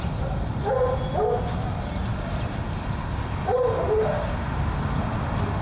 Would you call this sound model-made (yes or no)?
no